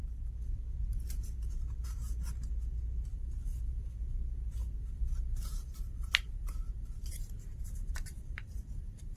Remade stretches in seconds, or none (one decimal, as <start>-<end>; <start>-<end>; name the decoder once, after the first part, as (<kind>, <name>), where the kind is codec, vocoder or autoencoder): 3.1-3.7 (vocoder, BigVGAN v2); 4.6-9.2